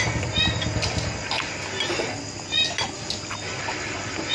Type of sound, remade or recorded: recorded